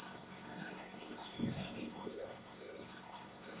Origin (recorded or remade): remade